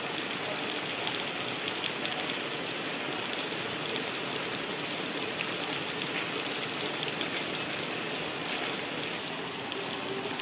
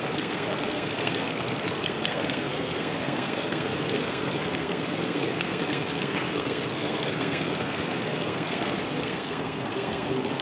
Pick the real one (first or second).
first